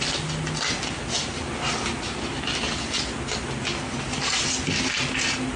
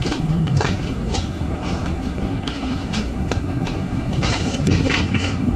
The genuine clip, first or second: first